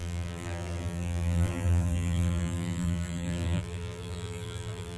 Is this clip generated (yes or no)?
yes